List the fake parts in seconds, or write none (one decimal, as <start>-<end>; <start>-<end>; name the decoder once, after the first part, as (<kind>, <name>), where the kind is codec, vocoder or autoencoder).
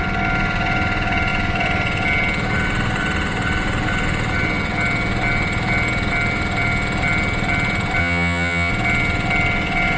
8.0-8.7 (vocoder, HiFi-GAN)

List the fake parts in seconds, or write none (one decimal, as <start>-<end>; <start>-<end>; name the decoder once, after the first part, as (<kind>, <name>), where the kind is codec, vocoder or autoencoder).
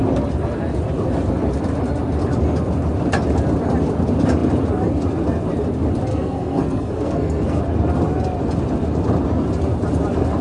6.1-7.6 (codec, SNAC)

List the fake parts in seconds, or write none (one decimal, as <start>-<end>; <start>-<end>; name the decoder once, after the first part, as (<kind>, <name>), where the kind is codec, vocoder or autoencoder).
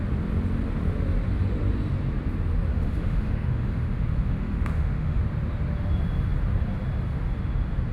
2.7-5.2 (autoencoder, DAC-VAE)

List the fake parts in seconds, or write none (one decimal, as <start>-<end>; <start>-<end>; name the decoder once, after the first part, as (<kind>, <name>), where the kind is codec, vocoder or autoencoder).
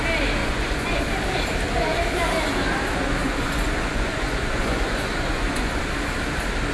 0.4-1.0 (vocoder, Vocos); 3.2-5.8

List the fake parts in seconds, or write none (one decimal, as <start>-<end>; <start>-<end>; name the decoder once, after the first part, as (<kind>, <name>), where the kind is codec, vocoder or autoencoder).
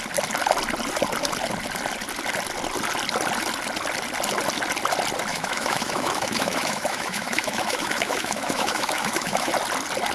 5.3-9.5 (autoencoder, DAC-VAE)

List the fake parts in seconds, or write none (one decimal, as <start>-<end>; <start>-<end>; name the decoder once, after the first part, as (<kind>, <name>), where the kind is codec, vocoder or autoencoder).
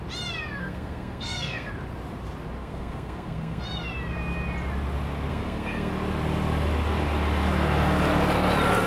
0.6-1.7 (codec, SNAC); 2.6-3.6; 5.3-5.9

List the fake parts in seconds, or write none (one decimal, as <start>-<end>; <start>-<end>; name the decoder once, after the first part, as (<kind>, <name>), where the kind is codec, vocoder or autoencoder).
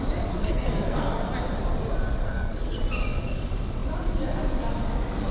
0.4-1.3 (codec, SNAC); 2.2-2.8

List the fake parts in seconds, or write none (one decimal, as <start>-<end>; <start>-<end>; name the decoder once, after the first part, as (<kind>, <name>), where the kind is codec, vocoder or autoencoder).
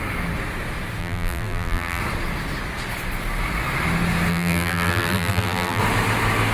1.0-2.0 (vocoder, BigVGAN v2); 4.3-5.8